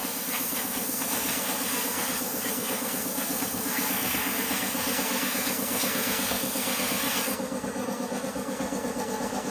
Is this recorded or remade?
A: remade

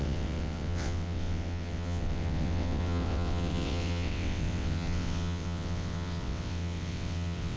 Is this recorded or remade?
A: remade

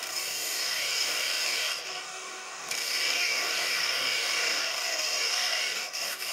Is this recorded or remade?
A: remade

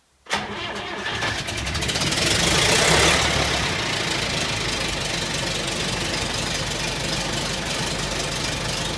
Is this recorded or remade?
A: recorded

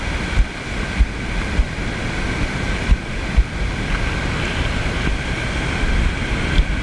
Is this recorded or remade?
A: recorded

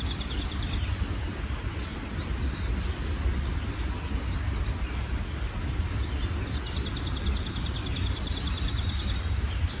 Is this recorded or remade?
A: recorded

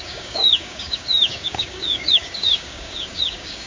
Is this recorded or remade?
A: remade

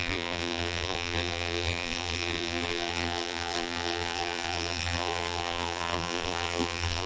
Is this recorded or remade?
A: remade